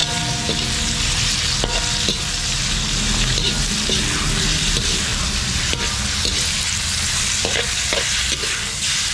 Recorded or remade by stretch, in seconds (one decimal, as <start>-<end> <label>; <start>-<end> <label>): 0.0-9.1 recorded